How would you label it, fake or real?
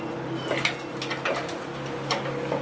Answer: real